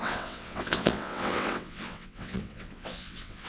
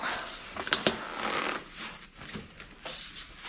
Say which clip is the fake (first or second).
first